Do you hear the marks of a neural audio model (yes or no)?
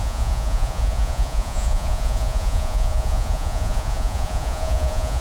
yes